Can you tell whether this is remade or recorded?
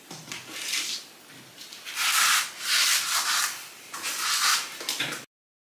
remade